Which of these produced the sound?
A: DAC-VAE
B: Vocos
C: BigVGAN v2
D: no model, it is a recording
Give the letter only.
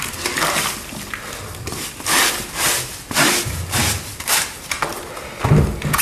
D